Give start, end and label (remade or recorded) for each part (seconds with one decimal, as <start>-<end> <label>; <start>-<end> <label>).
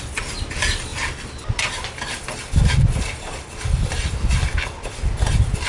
0.0-5.7 recorded